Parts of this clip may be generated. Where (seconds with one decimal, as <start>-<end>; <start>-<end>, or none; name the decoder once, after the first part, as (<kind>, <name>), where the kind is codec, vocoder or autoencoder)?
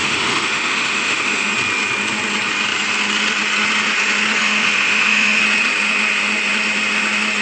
0.0-1.5 (autoencoder, DAC-VAE); 4.4-5.4